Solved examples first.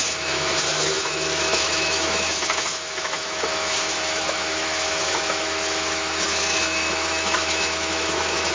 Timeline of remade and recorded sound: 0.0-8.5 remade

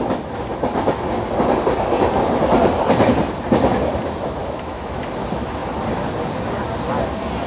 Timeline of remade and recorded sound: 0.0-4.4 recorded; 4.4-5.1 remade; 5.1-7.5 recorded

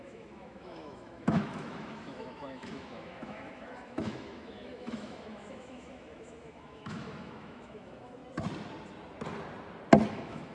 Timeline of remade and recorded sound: 0.0-8.2 remade; 8.2-10.1 recorded; 10.1-10.5 remade